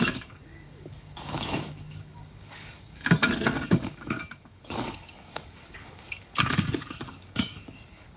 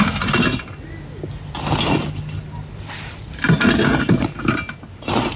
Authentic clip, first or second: second